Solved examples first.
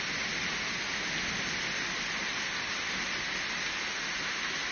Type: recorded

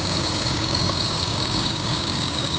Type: remade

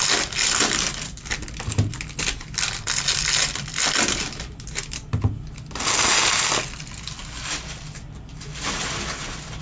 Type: recorded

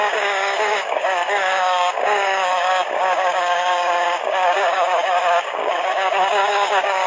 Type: remade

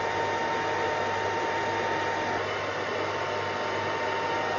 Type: recorded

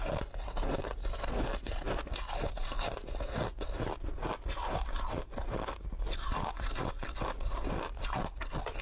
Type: recorded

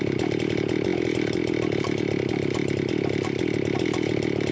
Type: recorded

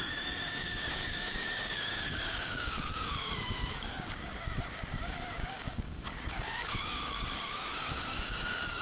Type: remade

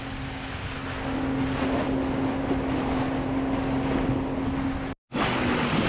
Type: recorded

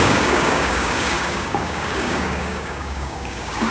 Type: remade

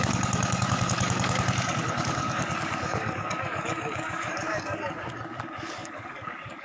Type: remade